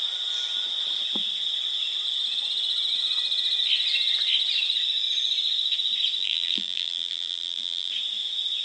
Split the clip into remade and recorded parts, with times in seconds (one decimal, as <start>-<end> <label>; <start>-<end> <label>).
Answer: 0.0-6.2 recorded; 6.2-7.9 remade; 7.9-8.6 recorded

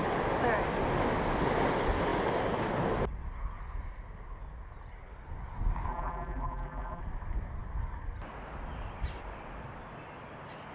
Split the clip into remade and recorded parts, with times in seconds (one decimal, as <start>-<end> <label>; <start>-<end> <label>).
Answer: 0.0-5.9 recorded; 5.9-7.0 remade; 7.0-10.7 recorded

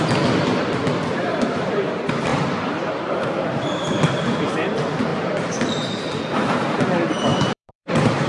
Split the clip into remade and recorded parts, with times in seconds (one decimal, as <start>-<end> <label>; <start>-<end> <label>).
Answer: 0.0-1.3 recorded; 1.3-1.9 remade; 1.9-2.3 recorded; 2.3-4.0 remade; 4.0-5.1 recorded; 5.1-6.2 remade; 6.2-7.3 recorded; 7.3-8.3 remade

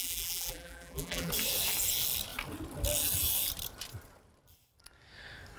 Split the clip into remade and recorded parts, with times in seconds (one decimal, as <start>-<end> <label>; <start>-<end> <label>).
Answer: 0.0-1.3 remade; 1.3-5.6 recorded

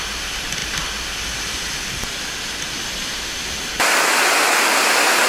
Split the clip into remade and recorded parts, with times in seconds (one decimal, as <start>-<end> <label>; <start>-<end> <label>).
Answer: 0.0-5.3 recorded

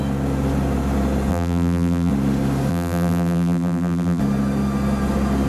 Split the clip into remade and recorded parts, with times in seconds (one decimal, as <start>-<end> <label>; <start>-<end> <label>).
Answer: 0.0-1.3 recorded; 1.3-2.1 remade; 2.1-2.7 recorded; 2.7-4.2 remade; 4.2-5.5 recorded

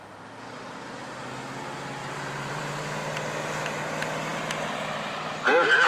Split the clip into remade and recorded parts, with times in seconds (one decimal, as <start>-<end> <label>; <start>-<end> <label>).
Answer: 0.0-2.0 recorded; 2.0-2.6 remade; 2.6-5.9 recorded